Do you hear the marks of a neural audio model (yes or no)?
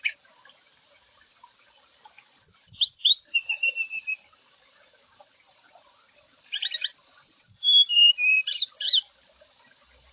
yes